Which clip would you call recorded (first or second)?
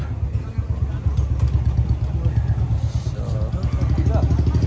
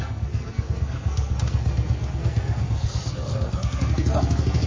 first